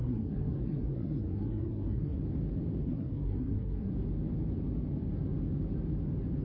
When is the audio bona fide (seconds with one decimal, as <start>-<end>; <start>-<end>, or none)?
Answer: 2.2-2.8; 3.9-6.4